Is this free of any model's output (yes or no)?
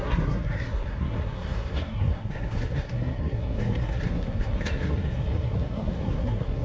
no